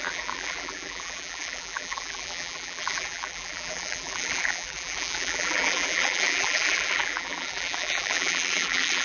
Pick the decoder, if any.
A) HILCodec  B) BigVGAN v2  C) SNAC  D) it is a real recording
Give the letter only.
B